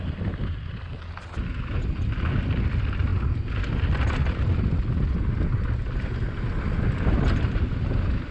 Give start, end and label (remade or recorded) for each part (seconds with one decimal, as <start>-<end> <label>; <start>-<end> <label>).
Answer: 0.0-8.3 recorded